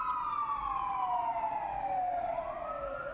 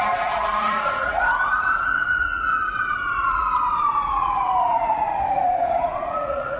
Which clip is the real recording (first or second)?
first